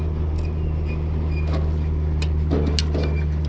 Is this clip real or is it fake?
real